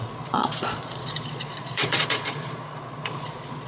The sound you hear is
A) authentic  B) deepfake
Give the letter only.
B